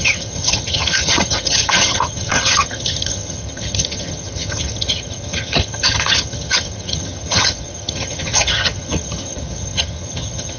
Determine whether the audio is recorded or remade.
remade